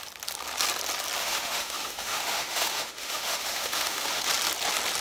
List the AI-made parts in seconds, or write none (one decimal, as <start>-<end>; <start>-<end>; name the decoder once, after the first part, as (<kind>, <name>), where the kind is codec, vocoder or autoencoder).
1.2-4.2 (autoencoder, DAC-VAE)